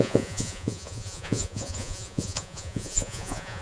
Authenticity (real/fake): fake